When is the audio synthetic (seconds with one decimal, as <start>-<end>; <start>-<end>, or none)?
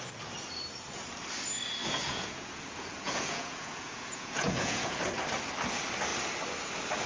1.8-5.0